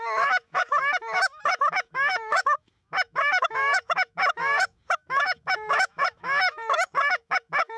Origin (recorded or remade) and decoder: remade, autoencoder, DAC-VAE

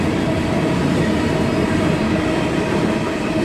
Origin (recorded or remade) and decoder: recorded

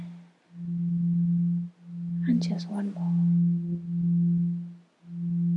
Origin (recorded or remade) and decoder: recorded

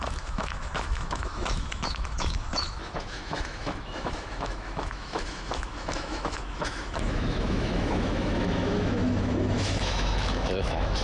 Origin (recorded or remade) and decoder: remade, autoencoder, DAC-VAE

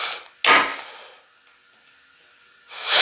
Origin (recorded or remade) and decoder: recorded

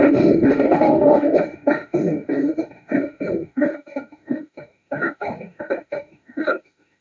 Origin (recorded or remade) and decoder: remade, autoencoder, DAC-VAE